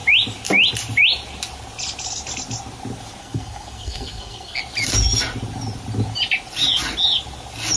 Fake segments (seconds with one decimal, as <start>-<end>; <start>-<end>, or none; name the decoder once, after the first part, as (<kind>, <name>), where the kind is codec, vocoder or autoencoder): 3.2-4.6 (codec, SNAC)